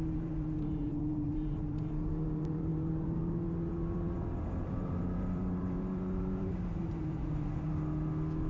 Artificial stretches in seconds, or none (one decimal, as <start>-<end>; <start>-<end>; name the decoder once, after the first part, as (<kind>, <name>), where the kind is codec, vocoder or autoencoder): 0.0-7.7 (vocoder, BigVGAN v2)